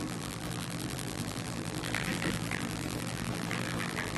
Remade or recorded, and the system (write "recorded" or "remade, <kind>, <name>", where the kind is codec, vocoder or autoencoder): remade, vocoder, BigVGAN v2